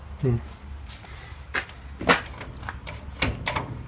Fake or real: real